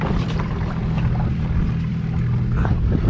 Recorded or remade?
recorded